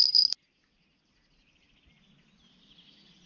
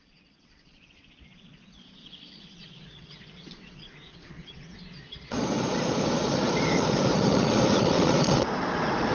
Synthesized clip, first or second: second